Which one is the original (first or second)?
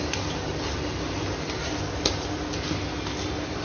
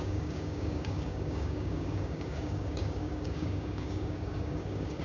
first